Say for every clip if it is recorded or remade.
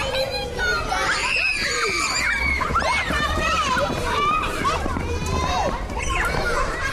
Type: remade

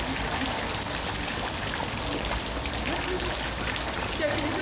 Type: recorded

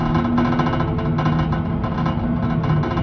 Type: recorded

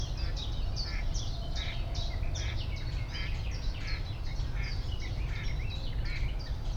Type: recorded